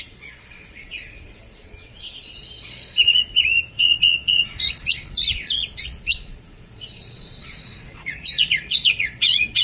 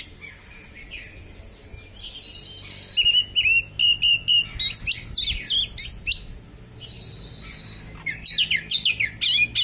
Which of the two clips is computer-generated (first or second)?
first